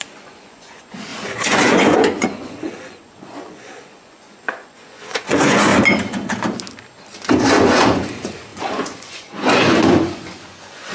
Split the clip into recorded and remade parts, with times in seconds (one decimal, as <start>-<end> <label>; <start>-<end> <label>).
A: 0.0-5.7 remade; 5.7-7.5 recorded; 7.5-10.9 remade